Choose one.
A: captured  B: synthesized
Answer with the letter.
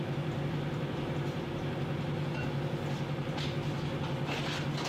A